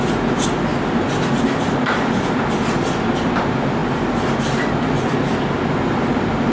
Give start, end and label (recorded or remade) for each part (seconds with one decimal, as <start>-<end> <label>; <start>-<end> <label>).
0.0-6.5 recorded